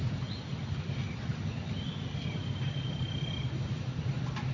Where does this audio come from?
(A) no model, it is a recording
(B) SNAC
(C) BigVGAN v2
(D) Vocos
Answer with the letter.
A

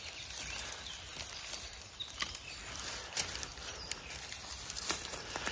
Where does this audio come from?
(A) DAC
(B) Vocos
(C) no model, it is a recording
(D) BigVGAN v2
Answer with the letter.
C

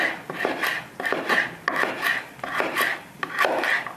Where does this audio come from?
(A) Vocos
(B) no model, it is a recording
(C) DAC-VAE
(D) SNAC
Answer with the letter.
B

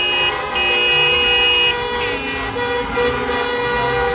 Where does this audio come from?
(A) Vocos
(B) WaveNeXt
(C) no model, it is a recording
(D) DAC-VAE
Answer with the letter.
C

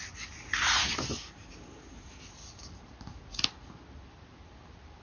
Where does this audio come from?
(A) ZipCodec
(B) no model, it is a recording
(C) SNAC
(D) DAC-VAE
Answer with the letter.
B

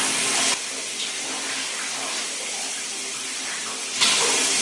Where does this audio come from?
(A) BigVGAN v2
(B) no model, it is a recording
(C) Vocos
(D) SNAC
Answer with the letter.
A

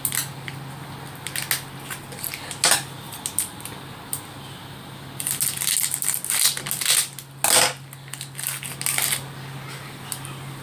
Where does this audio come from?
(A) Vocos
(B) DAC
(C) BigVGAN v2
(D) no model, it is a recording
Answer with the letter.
D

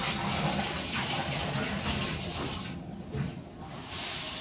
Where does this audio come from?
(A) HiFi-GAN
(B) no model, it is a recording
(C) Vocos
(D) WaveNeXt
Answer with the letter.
B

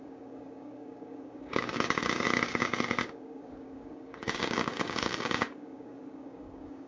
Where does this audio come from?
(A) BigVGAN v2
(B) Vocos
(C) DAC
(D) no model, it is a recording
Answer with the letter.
C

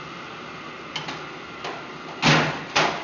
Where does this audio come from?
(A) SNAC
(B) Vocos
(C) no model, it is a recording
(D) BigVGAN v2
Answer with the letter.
C